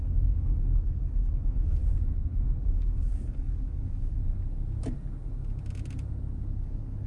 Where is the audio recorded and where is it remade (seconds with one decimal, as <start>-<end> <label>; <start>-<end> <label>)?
0.0-1.8 remade; 1.8-2.6 recorded; 2.6-4.2 remade; 4.2-6.6 recorded; 6.6-7.1 remade